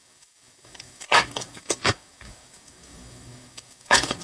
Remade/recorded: remade